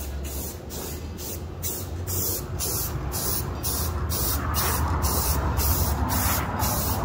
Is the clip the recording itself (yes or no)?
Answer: yes